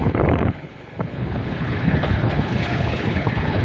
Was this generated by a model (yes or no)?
yes